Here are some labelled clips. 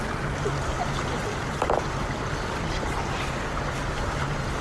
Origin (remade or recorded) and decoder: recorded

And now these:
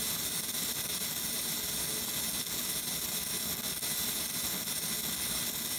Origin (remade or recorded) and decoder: recorded